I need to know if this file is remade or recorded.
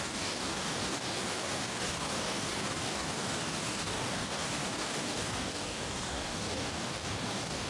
remade